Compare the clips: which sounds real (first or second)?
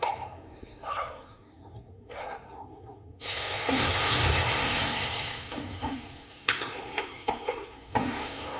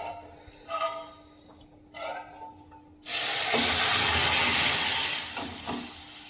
second